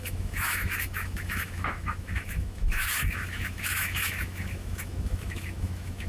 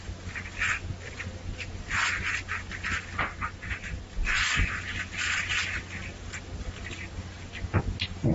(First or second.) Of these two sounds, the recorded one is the second